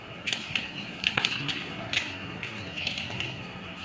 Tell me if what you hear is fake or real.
fake